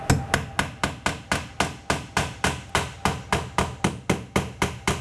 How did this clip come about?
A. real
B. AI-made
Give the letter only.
A